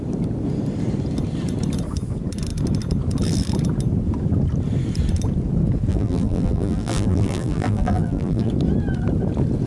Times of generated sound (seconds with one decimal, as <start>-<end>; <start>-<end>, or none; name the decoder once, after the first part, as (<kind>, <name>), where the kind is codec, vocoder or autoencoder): 5.9-8.5 (vocoder, BigVGAN v2)